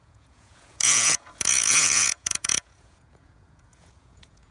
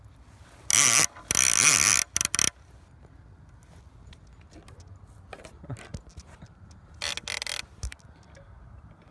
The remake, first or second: first